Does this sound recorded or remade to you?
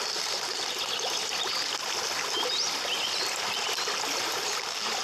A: recorded